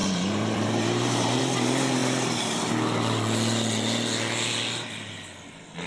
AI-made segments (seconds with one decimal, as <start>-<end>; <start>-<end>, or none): 0.0-1.4